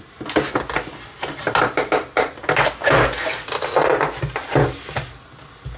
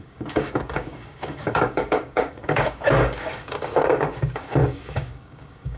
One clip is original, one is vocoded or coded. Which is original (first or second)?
first